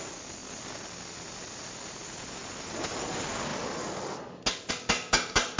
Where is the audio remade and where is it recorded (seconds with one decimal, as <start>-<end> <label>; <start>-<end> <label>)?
0.0-5.6 recorded